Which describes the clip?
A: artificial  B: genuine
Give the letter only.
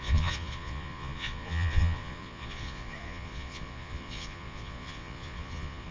A